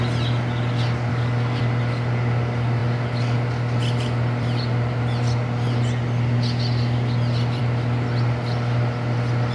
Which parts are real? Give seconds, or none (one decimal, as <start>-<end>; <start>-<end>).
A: 0.0-1.1; 1.6-9.5